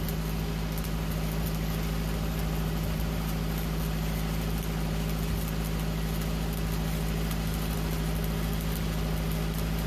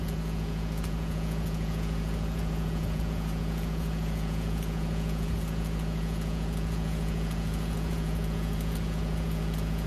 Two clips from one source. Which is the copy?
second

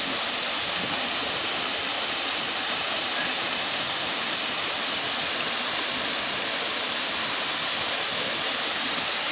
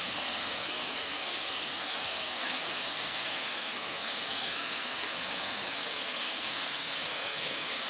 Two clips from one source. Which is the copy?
second